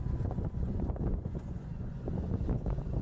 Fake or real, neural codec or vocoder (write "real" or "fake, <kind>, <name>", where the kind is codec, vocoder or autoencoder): fake, vocoder, Vocos